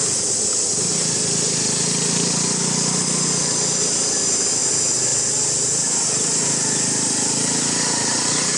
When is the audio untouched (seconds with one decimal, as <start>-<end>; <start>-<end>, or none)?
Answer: 0.0-8.6